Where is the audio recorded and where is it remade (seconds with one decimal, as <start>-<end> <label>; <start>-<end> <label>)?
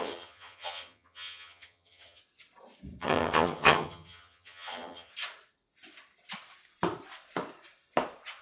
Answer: 0.0-2.2 remade; 2.2-3.0 recorded; 3.0-5.1 remade; 5.1-8.4 recorded